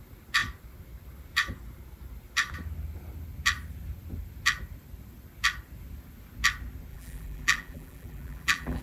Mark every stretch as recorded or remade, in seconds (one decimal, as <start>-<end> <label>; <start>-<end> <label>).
0.0-6.9 recorded; 6.9-8.8 remade